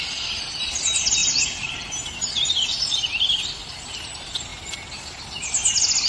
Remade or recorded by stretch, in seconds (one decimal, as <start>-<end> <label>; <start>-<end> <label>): 0.0-1.2 recorded; 1.2-2.5 remade; 2.5-3.6 recorded; 3.6-4.1 remade; 4.1-6.1 recorded